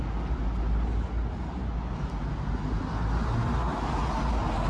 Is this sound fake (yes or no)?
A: no